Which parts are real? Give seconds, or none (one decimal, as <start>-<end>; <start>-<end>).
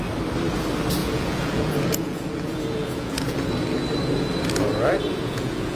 0.0-1.0; 3.5-5.0